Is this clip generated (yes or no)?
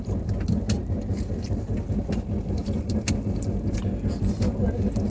no